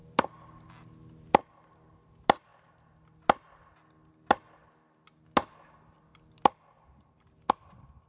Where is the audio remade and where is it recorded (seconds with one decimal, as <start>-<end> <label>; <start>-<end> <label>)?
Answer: 0.0-0.7 remade; 0.7-8.1 recorded